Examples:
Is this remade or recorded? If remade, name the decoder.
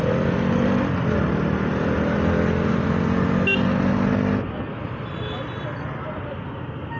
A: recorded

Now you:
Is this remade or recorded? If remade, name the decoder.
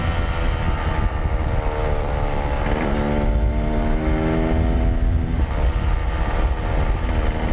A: recorded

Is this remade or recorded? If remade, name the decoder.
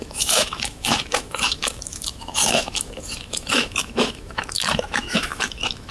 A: remade, autoencoder, DAC-VAE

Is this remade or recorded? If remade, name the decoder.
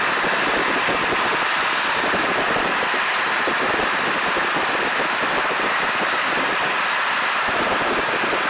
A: recorded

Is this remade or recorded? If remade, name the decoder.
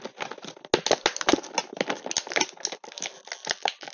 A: recorded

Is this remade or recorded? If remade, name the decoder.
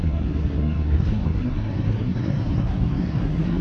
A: remade, codec, SNAC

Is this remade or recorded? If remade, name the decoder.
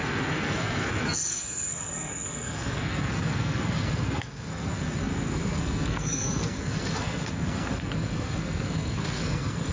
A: remade, codec, SNAC